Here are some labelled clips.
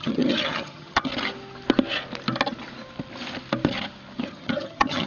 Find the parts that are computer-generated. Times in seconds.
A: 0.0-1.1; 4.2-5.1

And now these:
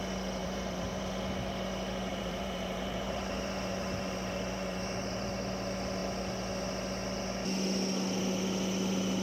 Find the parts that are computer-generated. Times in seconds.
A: 0.4-1.0; 2.1-5.3

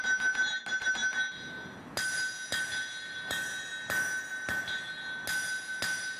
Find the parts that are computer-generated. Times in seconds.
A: none

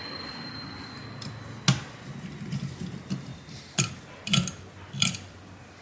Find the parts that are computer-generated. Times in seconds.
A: none

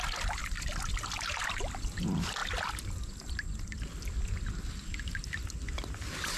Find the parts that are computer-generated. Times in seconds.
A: none

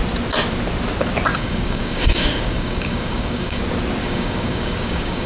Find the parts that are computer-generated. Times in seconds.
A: 1.3-3.6; 4.0-5.3

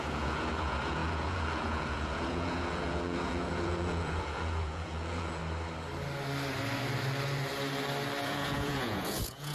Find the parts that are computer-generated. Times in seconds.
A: 0.0-5.4; 8.2-9.5

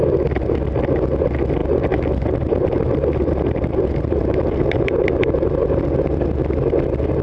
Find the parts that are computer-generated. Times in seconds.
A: 1.6-5.7